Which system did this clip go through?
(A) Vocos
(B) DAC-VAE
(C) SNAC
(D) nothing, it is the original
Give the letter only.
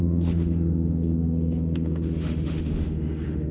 B